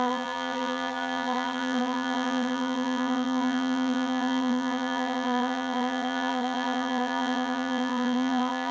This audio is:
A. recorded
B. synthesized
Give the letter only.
B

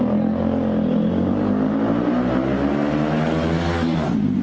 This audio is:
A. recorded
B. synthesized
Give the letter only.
A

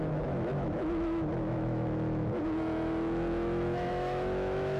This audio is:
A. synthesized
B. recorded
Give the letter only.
A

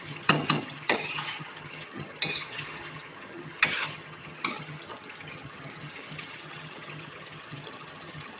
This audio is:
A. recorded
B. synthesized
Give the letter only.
B